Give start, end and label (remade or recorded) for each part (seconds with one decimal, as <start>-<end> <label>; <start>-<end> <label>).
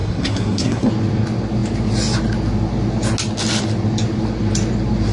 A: 0.0-0.9 remade; 0.9-5.1 recorded